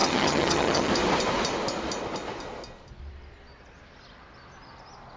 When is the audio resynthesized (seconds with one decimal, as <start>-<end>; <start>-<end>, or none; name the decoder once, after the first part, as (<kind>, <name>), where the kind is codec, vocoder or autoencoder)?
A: 0.0-0.9 (vocoder, HiFi-GAN)